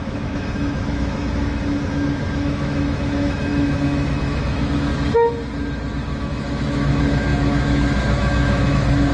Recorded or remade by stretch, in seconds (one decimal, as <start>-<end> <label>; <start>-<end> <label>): 0.0-4.9 remade; 4.9-6.2 recorded; 6.2-9.1 remade